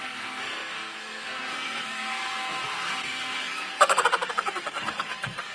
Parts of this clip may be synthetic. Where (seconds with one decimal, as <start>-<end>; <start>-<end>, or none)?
0.0-5.5